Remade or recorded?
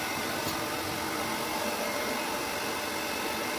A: recorded